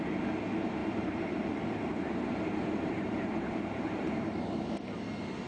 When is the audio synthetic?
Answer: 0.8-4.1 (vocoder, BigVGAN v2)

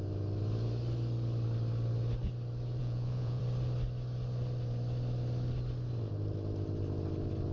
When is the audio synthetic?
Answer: 2.8-3.4 (vocoder, Vocos)